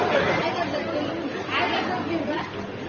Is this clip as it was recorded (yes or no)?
yes